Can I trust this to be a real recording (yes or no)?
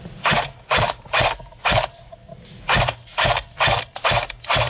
yes